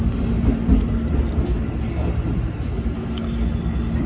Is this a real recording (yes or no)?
yes